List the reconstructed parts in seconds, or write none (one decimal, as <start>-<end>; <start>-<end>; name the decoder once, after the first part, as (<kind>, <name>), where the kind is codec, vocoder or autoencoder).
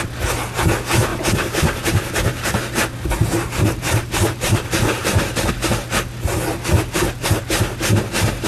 1.1-5.5 (vocoder, BigVGAN v2)